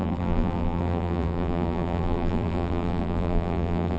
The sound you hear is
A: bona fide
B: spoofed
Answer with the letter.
B